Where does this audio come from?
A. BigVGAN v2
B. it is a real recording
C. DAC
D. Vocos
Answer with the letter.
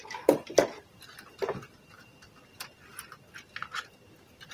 B